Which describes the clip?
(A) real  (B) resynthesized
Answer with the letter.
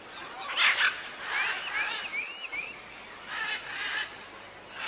A